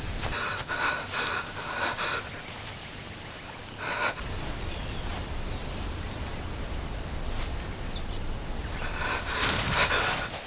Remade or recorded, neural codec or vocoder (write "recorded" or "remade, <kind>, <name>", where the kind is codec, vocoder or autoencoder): recorded